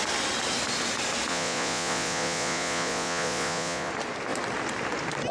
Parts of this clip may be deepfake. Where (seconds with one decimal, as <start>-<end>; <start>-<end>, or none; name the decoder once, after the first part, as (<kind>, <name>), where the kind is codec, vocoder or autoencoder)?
1.3-3.9 (vocoder, Vocos)